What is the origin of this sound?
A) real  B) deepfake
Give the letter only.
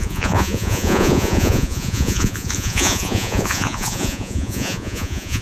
B